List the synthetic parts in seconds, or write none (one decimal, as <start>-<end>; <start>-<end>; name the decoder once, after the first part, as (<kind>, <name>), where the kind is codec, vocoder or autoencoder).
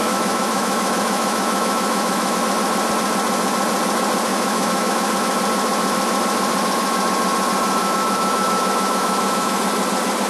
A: 0.0-2.4 (autoencoder, DAC-VAE); 4.3-5.1; 7.8-9.6